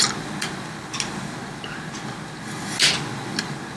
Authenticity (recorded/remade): recorded